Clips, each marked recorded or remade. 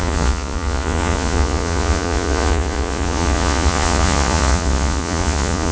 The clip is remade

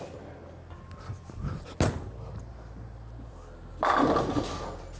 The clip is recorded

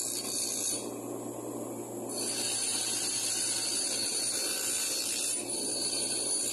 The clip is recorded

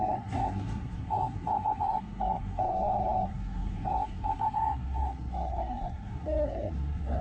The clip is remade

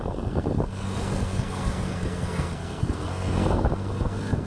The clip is remade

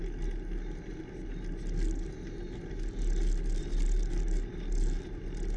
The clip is recorded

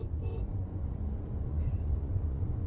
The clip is remade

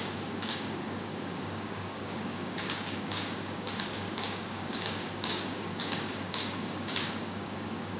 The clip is remade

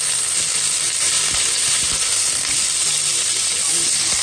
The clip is recorded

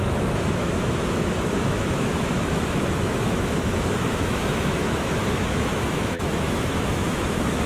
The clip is remade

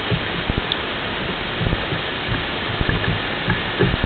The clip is recorded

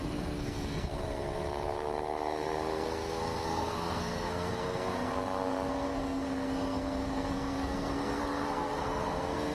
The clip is remade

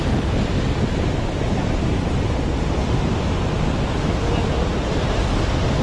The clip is recorded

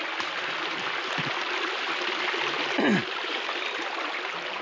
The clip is recorded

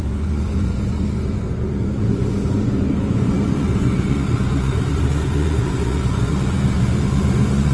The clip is remade